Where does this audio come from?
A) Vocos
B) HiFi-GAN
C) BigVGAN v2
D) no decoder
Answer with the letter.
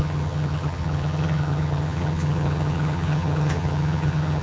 B